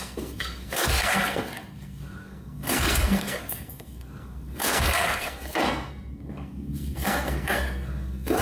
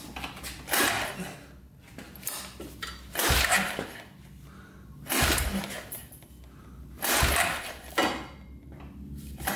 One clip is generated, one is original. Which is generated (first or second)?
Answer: first